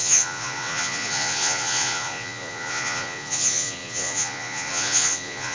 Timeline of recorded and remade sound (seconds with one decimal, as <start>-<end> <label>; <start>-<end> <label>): 0.0-5.5 remade